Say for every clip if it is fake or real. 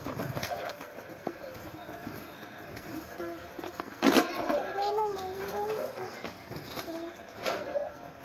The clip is fake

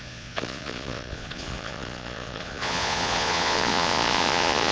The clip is fake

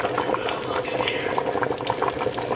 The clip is real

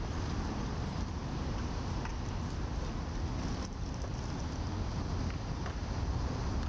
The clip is real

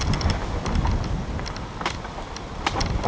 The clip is real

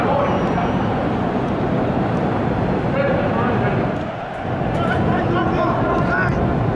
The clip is real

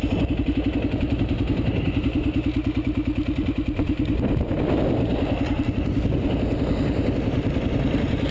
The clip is real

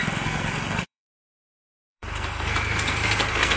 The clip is fake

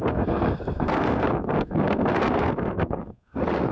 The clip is fake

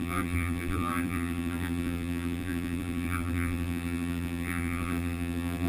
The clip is fake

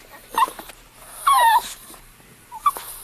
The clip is fake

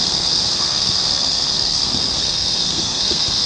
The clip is fake